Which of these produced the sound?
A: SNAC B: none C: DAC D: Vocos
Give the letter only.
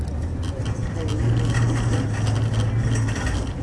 B